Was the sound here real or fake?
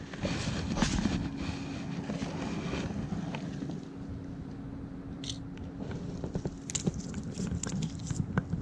real